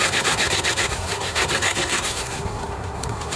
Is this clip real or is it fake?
fake